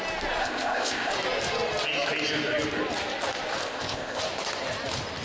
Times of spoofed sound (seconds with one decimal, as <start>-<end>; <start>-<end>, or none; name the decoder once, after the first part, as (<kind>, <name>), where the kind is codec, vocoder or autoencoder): 0.4-1.1 (codec, ZipCodec); 3.6-4.2